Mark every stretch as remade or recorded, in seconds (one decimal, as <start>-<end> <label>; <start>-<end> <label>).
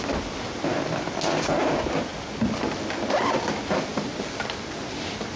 0.0-5.4 recorded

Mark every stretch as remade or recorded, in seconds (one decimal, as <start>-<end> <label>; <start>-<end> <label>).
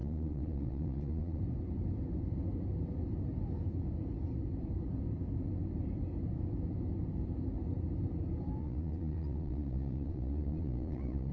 0.0-1.4 remade; 1.4-8.6 recorded; 8.6-11.3 remade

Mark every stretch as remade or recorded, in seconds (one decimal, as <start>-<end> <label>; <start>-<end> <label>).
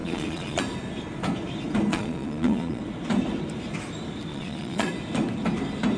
0.0-0.6 remade; 0.6-1.9 recorded; 1.9-2.8 remade; 2.8-4.3 recorded; 4.3-4.9 remade; 4.9-6.0 recorded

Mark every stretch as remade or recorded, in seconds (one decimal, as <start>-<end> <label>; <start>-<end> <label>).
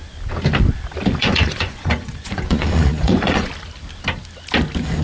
0.0-1.2 recorded; 1.2-3.5 remade; 3.5-5.0 recorded